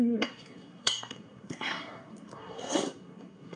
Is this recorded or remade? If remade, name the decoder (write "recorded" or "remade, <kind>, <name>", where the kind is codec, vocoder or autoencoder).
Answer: remade, codec, SNAC